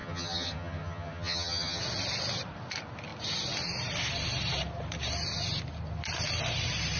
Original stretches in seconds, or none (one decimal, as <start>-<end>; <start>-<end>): 1.8-7.0